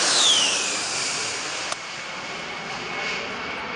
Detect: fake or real real